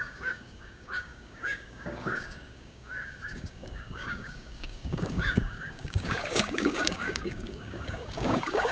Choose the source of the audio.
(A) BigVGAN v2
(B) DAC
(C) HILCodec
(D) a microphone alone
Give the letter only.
B